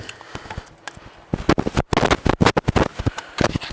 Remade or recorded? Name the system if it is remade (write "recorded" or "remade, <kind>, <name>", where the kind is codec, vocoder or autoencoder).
recorded